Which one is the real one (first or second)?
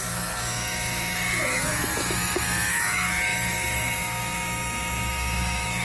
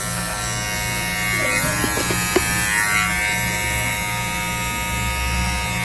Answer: second